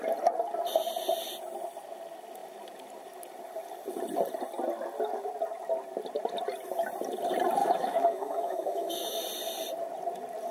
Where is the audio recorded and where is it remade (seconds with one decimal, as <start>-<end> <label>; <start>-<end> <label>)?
0.0-7.6 recorded; 7.6-9.2 remade; 9.2-10.5 recorded